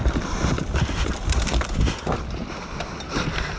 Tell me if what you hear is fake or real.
real